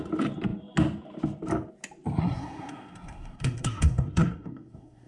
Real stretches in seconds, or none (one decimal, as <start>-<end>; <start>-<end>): 0.0-2.2